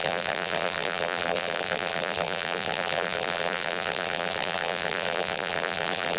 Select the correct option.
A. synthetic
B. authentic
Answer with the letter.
A